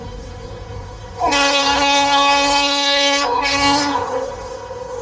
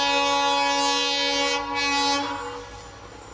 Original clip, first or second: second